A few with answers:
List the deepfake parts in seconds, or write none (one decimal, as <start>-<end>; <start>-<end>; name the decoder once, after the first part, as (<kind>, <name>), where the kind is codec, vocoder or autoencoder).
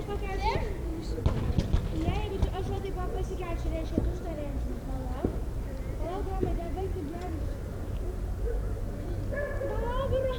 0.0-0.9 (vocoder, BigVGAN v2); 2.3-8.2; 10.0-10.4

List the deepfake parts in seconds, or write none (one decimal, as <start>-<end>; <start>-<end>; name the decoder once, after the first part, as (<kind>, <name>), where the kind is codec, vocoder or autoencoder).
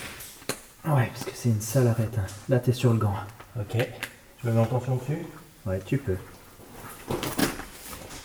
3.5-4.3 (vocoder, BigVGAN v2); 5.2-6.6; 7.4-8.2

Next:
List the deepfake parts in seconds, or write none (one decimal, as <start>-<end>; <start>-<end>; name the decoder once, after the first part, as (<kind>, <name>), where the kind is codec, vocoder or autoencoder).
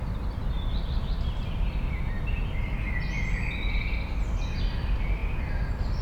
none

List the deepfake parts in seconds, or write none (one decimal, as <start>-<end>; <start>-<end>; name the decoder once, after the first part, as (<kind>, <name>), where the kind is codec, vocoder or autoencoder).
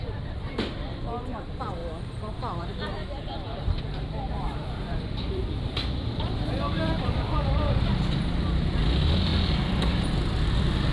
0.0-1.8 (vocoder, BigVGAN v2); 2.6-10.9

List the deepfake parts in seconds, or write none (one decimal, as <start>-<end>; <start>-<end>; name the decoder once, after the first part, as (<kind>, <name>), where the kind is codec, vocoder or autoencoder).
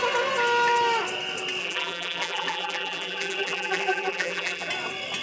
1.6-4.7 (vocoder, BigVGAN v2)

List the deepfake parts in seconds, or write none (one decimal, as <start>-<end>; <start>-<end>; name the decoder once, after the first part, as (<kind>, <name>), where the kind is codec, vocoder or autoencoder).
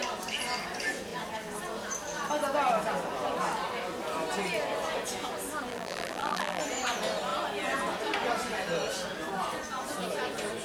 5.7-6.6 (vocoder, BigVGAN v2)